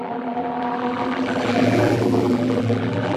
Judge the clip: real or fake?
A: fake